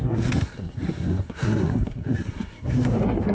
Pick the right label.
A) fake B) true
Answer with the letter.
A